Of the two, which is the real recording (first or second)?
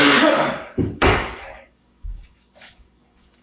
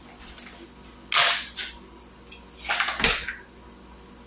second